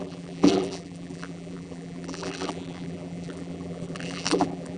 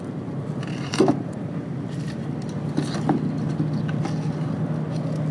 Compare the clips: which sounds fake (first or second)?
first